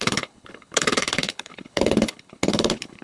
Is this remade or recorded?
remade